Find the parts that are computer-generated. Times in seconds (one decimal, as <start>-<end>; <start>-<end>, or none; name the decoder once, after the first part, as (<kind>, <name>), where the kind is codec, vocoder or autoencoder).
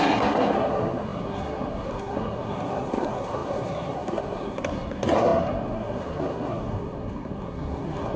0.0-8.2 (codec, SNAC)